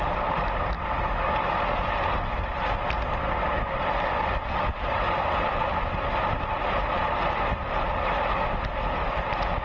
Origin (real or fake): real